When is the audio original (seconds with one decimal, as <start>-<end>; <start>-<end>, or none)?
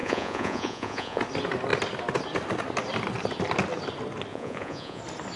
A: 1.2-4.3; 5.0-5.4